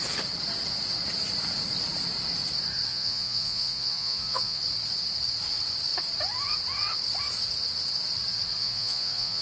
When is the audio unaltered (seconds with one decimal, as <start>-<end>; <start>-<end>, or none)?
0.0-2.9; 4.6-8.6